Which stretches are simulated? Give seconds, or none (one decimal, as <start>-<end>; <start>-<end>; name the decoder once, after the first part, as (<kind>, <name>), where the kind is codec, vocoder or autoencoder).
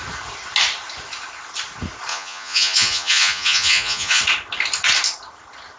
2.1-4.2 (vocoder, Vocos)